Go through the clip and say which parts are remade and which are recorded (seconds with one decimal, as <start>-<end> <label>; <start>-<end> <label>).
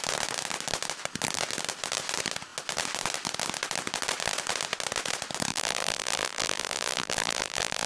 0.0-5.5 recorded; 5.5-7.9 remade